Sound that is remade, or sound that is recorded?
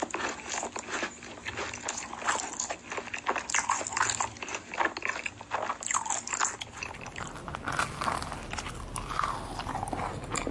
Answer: recorded